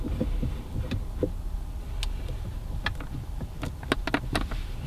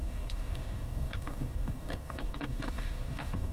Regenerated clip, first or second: second